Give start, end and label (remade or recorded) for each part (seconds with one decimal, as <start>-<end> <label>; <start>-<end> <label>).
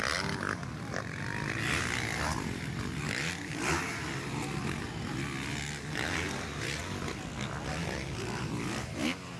0.0-9.4 recorded